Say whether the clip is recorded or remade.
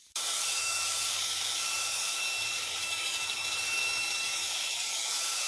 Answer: remade